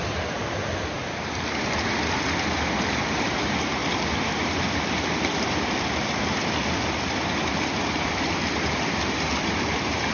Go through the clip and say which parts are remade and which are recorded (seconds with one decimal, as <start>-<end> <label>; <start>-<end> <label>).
0.0-10.1 remade